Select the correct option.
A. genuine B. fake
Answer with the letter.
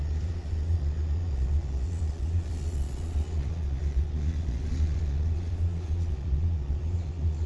B